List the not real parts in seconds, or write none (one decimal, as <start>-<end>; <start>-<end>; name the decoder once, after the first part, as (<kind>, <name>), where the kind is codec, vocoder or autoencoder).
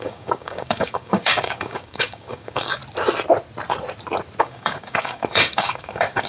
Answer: 0.0-2.8 (codec, DAC); 4.4-6.3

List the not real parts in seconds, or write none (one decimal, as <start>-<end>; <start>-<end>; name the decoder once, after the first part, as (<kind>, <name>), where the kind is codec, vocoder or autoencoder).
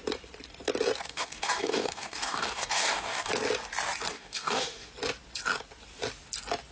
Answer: 1.1-3.3 (codec, DAC); 4.1-4.9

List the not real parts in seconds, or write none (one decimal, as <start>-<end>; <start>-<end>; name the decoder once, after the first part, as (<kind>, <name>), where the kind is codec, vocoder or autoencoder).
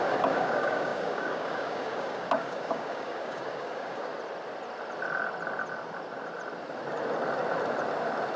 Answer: 0.0-4.1 (codec, DAC)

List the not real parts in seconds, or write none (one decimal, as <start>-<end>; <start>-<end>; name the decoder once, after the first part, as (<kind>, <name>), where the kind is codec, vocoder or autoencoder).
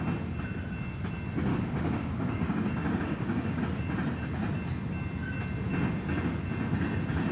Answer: 1.5-3.6 (codec, DAC)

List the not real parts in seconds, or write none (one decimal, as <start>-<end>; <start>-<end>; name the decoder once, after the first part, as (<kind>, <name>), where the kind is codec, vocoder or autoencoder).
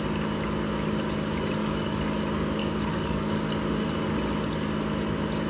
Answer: 1.6-2.2 (codec, DAC); 2.6-3.5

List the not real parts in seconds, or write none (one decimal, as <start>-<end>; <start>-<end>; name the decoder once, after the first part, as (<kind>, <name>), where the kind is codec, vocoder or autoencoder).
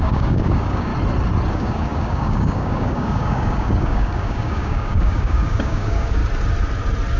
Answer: 0.0-0.9 (codec, DAC); 1.5-6.2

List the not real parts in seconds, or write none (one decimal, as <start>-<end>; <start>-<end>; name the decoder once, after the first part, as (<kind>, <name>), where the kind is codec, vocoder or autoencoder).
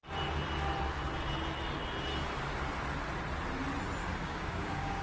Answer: 4.0-5.0 (codec, DAC)